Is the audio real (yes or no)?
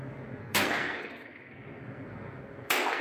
no